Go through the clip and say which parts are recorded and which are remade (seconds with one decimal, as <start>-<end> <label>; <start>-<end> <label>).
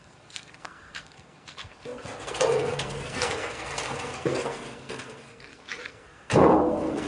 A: 0.0-7.1 remade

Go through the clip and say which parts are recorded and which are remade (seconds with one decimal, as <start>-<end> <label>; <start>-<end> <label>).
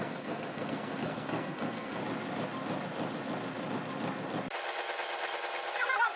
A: 0.0-2.0 remade; 2.0-5.7 recorded; 5.7-6.2 remade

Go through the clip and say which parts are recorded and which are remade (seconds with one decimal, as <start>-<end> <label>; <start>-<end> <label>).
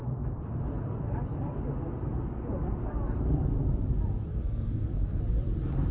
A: 0.0-4.3 recorded; 4.3-5.2 remade; 5.2-5.9 recorded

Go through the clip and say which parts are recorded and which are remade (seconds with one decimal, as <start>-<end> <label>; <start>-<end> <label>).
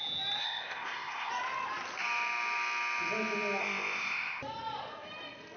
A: 0.0-0.4 recorded; 0.4-1.3 remade; 1.3-3.6 recorded; 3.6-4.4 remade; 4.4-5.6 recorded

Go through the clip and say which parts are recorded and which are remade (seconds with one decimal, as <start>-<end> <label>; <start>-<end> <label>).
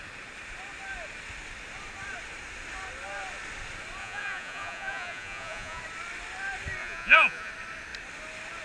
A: 0.0-4.0 recorded; 4.0-5.8 remade; 5.8-6.8 recorded; 6.8-7.5 remade; 7.5-8.6 recorded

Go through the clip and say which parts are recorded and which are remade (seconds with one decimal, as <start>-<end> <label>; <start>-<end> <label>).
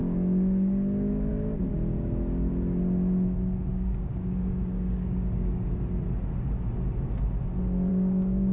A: 0.0-2.5 remade; 2.5-3.7 recorded; 3.7-5.7 remade; 5.7-7.9 recorded; 7.9-8.5 remade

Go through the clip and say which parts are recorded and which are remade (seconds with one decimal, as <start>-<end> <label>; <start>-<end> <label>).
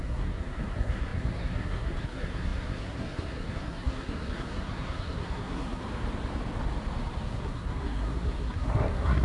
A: 0.0-5.8 remade; 5.8-7.2 recorded; 7.2-9.2 remade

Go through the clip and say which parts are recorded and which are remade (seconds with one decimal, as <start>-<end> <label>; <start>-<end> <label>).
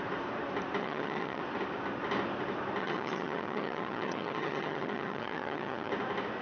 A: 0.0-0.8 recorded; 0.8-1.4 remade; 1.4-2.8 recorded; 2.8-5.9 remade; 5.9-6.4 recorded